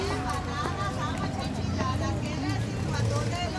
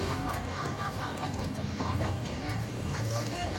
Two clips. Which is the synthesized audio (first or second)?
second